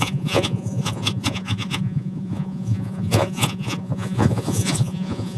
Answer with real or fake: fake